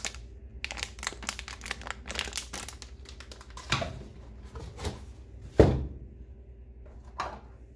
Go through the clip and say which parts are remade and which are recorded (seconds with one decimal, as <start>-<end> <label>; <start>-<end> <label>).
0.0-7.8 recorded